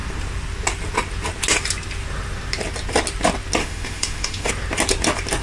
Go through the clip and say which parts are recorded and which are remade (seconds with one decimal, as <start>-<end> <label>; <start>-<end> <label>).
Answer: 0.0-3.6 recorded; 3.6-4.5 remade; 4.5-5.4 recorded